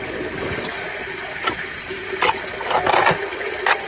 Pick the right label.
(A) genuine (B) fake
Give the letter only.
A